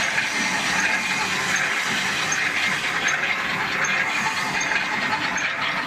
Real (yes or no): yes